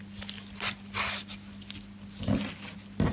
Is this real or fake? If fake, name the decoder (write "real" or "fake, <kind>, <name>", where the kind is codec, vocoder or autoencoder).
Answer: real